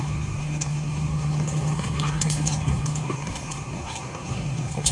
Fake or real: fake